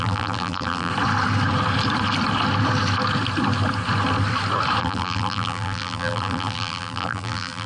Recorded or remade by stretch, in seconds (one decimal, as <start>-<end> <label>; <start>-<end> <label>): 0.0-0.9 remade; 0.9-4.8 recorded; 4.8-7.7 remade